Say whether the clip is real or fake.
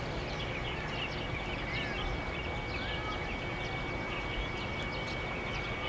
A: real